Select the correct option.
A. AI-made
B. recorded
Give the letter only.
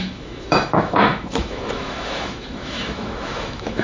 A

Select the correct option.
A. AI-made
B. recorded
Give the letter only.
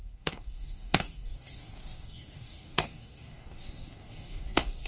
A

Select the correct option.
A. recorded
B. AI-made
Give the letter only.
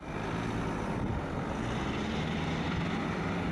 A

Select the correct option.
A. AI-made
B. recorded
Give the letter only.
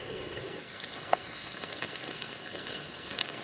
A